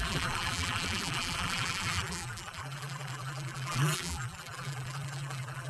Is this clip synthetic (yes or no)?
yes